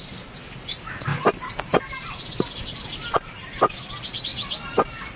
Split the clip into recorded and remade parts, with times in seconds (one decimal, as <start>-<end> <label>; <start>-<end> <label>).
0.0-5.2 recorded